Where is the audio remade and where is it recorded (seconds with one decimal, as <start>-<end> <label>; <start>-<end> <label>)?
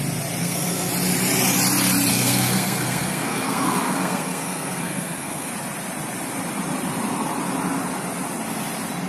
0.0-0.4 recorded; 0.4-0.9 remade; 0.9-2.1 recorded; 2.1-5.5 remade; 5.5-9.1 recorded